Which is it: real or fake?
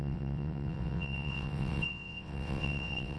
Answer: fake